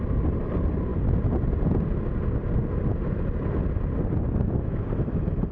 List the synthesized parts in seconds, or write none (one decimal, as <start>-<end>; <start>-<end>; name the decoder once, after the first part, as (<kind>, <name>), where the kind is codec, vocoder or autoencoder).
none